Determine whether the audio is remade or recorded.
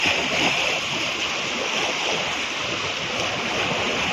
recorded